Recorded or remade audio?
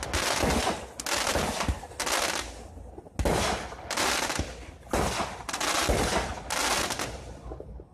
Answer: recorded